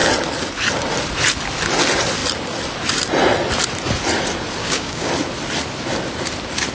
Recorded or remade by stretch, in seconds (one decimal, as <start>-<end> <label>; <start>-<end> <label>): 0.0-4.6 recorded; 4.6-5.1 remade; 5.1-6.7 recorded